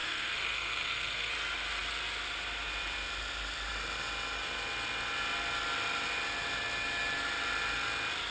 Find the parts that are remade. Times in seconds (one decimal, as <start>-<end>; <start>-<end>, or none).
0.0-1.3